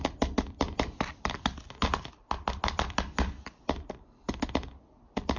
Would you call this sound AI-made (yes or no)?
no